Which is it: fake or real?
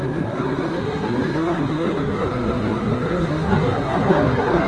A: fake